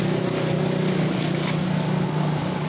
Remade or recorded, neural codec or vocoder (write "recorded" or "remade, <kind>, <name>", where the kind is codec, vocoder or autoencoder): remade, codec, DAC